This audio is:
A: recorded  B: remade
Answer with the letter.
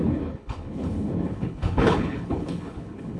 B